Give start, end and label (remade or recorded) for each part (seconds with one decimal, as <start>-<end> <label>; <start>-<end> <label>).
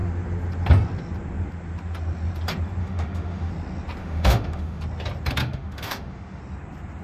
0.0-2.8 recorded; 2.8-3.5 remade; 3.5-4.0 recorded; 4.0-4.8 remade; 4.8-5.4 recorded; 5.4-6.4 remade; 6.4-7.0 recorded